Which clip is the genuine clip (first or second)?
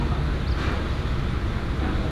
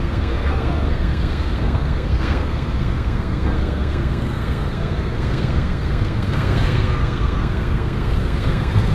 first